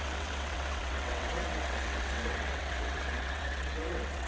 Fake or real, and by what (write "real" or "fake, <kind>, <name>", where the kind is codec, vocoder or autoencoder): fake, vocoder, WaveNeXt